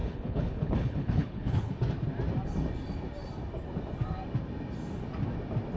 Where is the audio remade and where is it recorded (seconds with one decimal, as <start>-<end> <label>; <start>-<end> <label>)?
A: 0.0-1.7 remade; 1.7-5.8 recorded